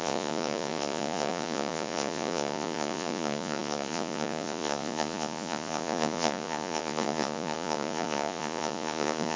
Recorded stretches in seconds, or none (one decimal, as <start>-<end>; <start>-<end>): none